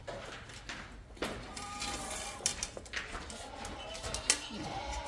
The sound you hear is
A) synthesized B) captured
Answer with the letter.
B